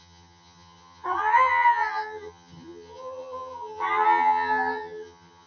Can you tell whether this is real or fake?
fake